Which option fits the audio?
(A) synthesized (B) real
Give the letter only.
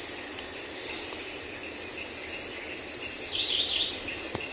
B